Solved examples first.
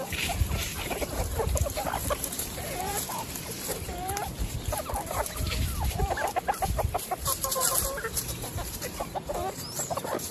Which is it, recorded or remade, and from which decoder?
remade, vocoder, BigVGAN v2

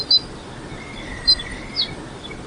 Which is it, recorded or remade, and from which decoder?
recorded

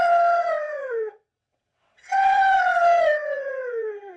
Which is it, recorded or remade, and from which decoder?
remade, vocoder, WaveNeXt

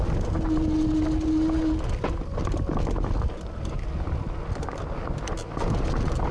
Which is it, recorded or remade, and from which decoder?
recorded